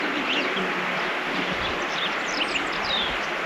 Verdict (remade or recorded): recorded